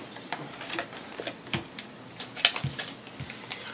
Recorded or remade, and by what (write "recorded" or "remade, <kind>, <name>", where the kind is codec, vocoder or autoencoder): recorded